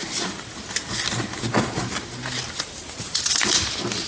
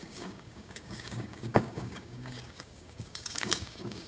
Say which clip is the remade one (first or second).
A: second